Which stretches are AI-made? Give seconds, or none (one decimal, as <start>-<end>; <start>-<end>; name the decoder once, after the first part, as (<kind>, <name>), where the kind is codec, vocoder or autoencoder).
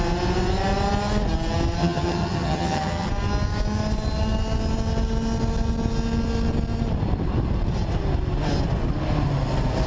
1.8-3.1 (vocoder, HiFi-GAN)